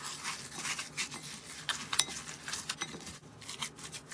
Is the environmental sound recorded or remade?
recorded